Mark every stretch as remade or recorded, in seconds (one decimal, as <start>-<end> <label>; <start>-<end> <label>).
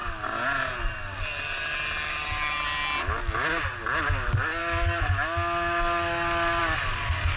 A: 0.0-7.4 recorded